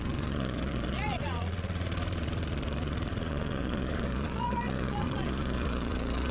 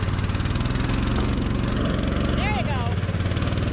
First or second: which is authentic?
second